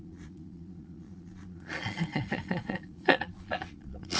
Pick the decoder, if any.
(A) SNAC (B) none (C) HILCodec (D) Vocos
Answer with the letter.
D